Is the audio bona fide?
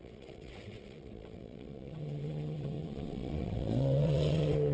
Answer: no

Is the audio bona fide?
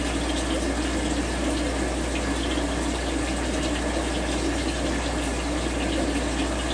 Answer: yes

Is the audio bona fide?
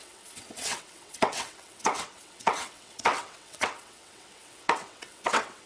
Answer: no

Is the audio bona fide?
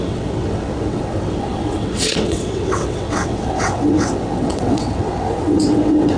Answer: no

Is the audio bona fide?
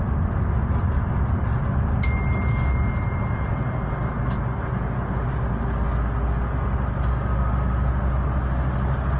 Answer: yes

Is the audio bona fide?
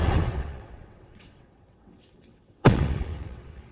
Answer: no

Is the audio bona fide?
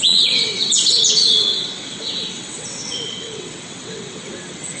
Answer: no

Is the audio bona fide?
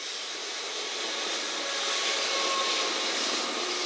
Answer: yes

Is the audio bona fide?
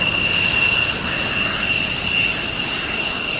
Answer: yes